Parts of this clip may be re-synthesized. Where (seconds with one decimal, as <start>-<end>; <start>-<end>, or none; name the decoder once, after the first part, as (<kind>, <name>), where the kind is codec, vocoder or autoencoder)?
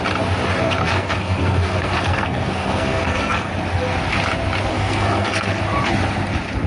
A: 0.6-3.5 (codec, SNAC); 4.7-5.6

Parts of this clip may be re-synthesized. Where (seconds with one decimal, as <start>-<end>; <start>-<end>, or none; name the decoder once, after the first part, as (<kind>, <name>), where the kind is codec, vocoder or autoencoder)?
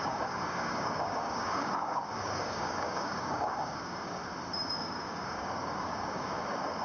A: 0.0-4.2 (codec, DAC); 4.8-6.8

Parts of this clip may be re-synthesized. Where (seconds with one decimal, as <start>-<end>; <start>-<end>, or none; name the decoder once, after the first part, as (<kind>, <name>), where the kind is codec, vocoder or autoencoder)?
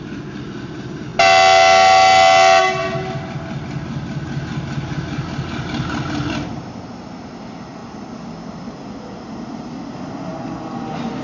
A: none